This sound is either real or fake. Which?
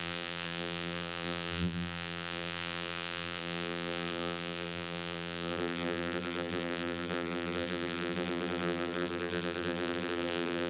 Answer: fake